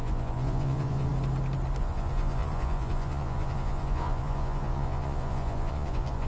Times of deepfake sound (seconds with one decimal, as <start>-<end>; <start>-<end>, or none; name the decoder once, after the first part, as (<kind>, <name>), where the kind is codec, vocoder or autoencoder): 0.0-1.1 (vocoder, Vocos); 1.8-6.3